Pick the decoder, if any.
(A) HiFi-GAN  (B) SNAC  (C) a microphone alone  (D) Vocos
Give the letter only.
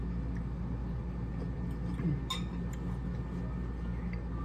C